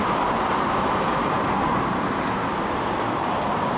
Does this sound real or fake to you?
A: real